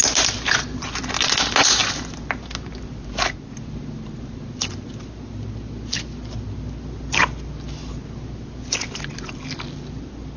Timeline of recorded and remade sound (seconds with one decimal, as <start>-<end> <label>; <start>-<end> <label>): 0.0-10.4 recorded